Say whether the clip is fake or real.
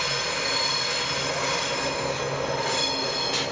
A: real